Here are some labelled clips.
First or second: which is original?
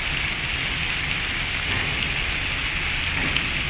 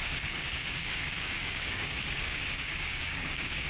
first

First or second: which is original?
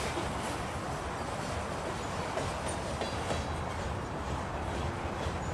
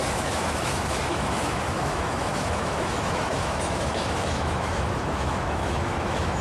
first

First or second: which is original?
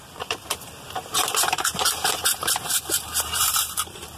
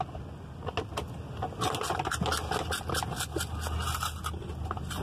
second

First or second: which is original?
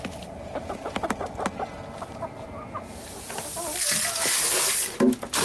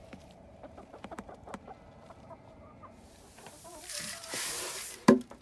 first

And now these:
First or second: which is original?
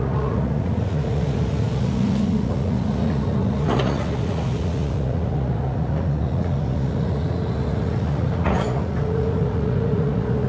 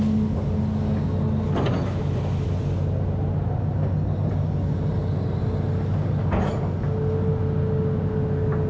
second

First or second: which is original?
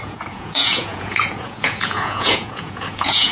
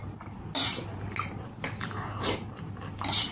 second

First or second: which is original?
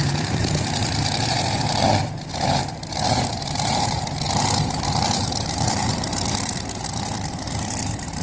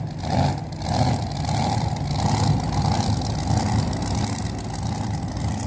second